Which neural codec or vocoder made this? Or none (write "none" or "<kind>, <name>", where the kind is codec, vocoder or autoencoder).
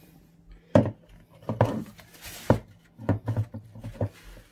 none